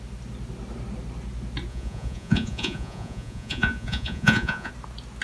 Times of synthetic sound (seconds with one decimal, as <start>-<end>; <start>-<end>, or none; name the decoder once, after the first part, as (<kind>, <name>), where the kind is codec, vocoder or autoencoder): 1.7-4.7 (vocoder, Vocos)